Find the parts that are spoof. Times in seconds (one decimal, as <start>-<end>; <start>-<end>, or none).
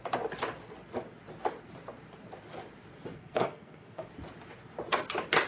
3.1-4.1